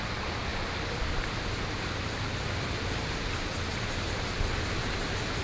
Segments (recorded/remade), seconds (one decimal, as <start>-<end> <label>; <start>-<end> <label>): 0.0-5.4 recorded

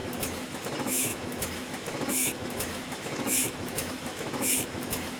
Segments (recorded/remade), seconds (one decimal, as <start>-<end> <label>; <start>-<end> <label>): 0.0-5.2 remade